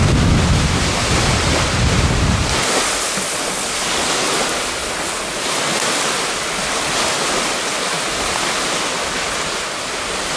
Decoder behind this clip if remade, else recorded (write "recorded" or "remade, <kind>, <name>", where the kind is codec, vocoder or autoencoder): recorded